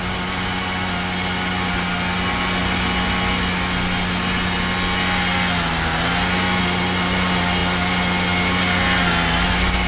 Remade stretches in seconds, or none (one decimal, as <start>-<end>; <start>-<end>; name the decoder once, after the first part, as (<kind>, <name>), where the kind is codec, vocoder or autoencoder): none